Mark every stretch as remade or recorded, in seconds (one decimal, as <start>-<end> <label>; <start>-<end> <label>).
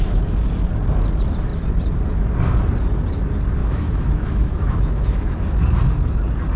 0.0-3.6 recorded; 3.6-5.4 remade; 5.4-6.6 recorded